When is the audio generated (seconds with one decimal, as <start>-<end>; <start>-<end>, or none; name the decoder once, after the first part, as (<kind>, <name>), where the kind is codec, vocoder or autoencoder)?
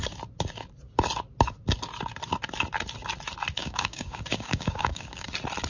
3.6-5.3 (codec, DAC)